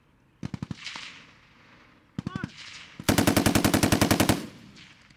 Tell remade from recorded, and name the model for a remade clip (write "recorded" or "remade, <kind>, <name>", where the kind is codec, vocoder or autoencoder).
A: recorded